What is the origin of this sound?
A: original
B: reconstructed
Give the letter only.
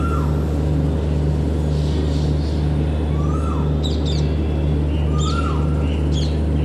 A